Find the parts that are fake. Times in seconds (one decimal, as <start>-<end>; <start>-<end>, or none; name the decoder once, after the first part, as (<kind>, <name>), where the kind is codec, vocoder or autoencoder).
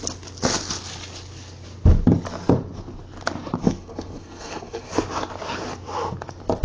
3.6-4.9 (codec, SNAC)